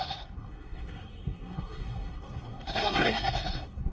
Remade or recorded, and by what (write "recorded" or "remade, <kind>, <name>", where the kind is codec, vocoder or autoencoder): remade, codec, SNAC